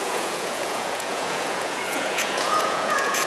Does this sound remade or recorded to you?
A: remade